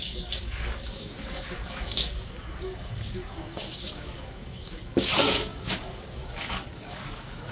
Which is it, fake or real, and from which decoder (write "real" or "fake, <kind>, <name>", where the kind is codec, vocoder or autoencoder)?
fake, codec, DAC